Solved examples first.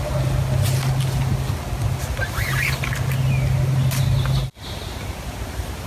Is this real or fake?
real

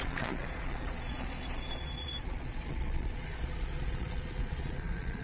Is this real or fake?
fake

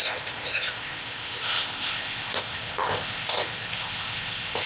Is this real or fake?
fake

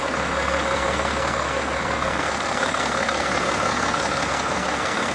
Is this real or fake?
fake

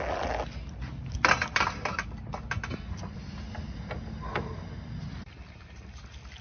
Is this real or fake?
real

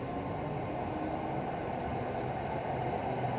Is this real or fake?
real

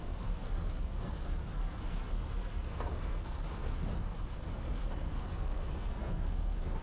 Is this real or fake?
fake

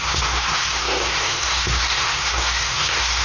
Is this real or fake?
fake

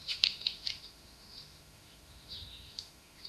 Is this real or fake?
fake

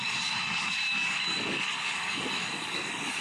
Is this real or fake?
fake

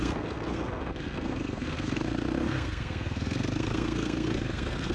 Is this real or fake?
fake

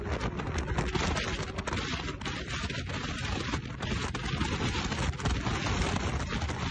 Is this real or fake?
real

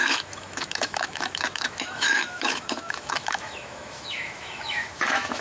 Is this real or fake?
fake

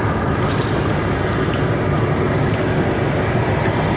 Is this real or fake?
real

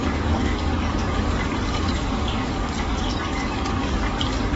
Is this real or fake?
fake